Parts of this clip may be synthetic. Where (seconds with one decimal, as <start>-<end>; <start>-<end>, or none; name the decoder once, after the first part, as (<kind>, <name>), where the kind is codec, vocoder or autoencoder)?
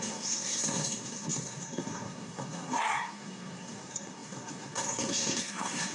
0.0-5.9 (codec, SNAC)